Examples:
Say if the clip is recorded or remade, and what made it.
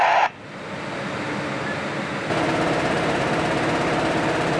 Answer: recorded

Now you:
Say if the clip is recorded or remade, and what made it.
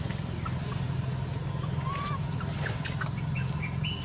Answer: recorded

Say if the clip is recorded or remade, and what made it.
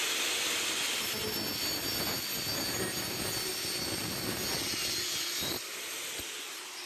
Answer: recorded